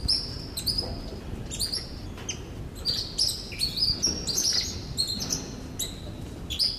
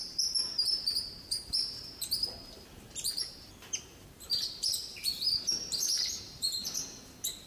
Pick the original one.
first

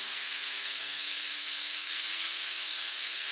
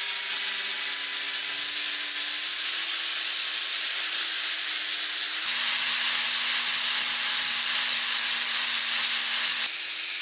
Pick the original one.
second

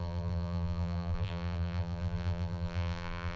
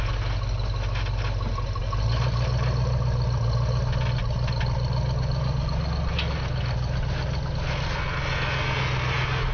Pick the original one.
second